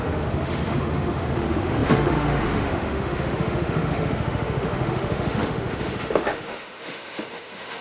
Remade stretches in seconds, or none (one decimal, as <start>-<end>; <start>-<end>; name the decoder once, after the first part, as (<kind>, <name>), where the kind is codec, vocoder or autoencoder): 0.0-7.8 (autoencoder, DAC-VAE)